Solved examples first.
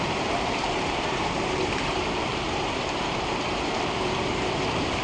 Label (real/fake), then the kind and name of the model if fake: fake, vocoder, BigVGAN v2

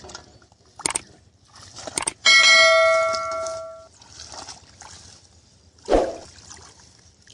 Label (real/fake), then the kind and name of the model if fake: real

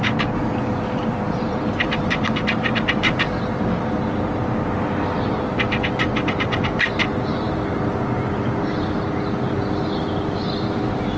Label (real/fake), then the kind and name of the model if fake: real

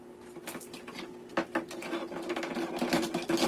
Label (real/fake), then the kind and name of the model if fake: real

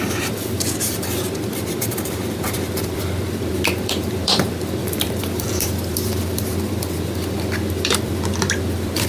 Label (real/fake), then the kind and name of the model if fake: fake, vocoder, BigVGAN v2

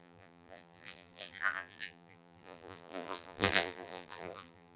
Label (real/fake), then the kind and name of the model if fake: fake, vocoder, BigVGAN v2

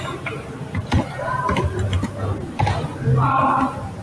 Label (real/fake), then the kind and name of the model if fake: fake, vocoder, BigVGAN v2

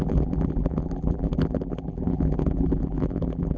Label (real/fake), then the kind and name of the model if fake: fake, vocoder, BigVGAN v2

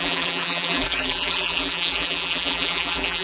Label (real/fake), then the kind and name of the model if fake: fake, vocoder, BigVGAN v2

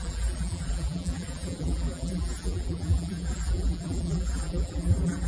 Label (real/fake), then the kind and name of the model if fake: fake, vocoder, BigVGAN v2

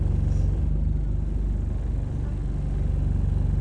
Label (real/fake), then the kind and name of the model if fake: real